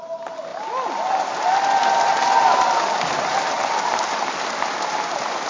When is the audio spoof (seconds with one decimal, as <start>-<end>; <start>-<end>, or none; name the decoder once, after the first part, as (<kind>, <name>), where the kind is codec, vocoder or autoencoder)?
none